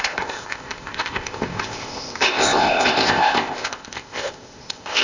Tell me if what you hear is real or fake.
fake